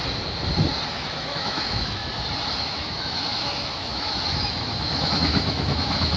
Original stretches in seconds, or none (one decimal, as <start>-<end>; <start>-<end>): 0.0-0.9; 2.0-2.6